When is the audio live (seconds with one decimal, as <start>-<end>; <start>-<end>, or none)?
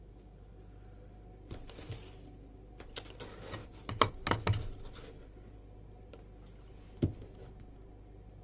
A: 0.0-8.4